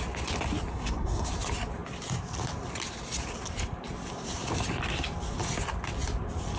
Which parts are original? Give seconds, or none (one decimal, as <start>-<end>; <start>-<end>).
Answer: 0.0-0.7; 1.3-6.6